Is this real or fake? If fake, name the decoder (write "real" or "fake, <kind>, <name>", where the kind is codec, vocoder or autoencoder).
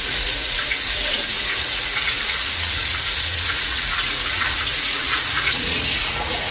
fake, vocoder, Vocos